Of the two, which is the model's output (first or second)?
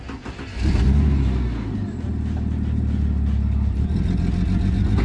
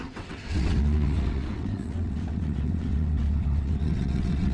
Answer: second